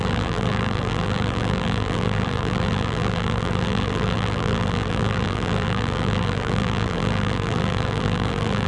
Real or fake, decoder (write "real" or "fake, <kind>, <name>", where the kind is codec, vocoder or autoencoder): fake, vocoder, BigVGAN v2